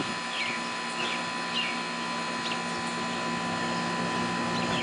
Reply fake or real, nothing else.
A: real